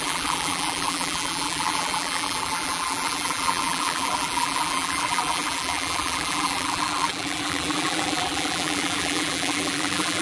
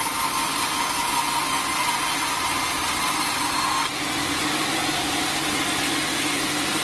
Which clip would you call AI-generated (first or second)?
first